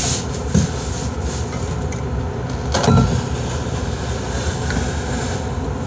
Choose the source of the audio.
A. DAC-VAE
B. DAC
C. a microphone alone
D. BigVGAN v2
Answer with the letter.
C